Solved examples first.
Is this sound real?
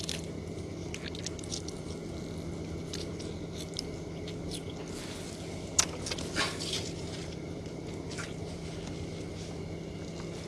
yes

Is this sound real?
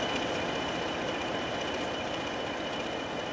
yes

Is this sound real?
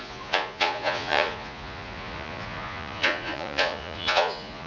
no